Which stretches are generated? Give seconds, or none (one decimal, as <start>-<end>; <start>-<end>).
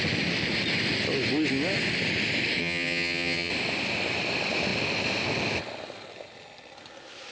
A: 2.6-3.5